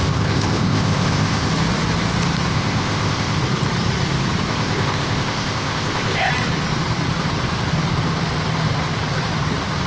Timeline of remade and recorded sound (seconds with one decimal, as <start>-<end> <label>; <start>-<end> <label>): 0.0-1.5 remade; 1.5-2.5 recorded; 2.5-3.4 remade; 3.4-4.5 recorded; 4.5-6.3 remade; 6.3-9.9 recorded